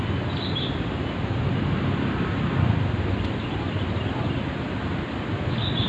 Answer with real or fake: real